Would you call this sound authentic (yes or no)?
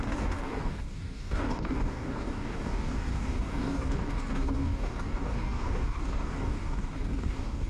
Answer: no